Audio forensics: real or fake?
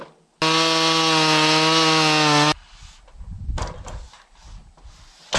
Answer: real